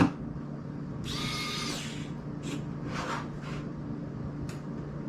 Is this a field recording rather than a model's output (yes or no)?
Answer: yes